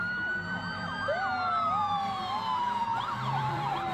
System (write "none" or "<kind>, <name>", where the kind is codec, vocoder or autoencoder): vocoder, BigVGAN v2